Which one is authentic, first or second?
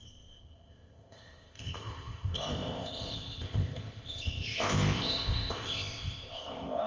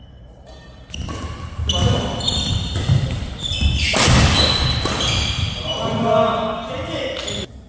second